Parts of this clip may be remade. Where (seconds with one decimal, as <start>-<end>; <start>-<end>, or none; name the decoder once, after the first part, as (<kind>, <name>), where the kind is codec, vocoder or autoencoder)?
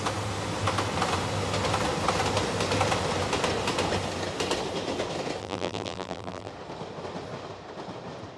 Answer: 5.4-6.5 (vocoder, BigVGAN v2)